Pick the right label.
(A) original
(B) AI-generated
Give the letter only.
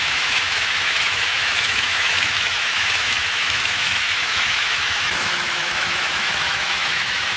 B